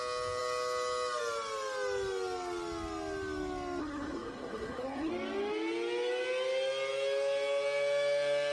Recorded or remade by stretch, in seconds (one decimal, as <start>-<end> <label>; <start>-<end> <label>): 0.0-3.8 recorded; 3.8-5.1 remade; 5.1-8.5 recorded